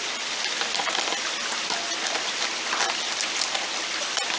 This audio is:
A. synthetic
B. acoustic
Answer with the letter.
B